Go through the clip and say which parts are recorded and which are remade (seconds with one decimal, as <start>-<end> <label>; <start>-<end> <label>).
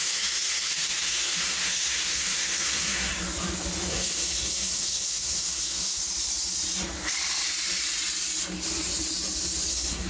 0.0-3.1 remade; 3.1-3.9 recorded; 3.9-6.0 remade; 6.0-9.7 recorded; 9.7-10.1 remade